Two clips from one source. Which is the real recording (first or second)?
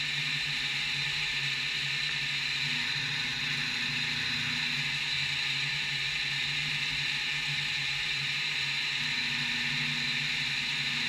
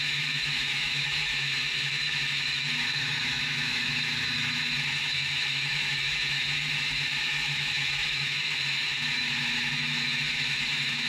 first